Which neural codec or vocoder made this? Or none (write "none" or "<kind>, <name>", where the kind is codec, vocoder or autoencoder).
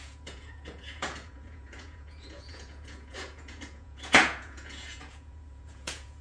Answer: vocoder, Vocos